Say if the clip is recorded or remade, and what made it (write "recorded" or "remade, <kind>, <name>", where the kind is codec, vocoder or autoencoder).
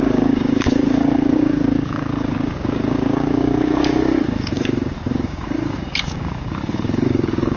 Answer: remade, codec, DAC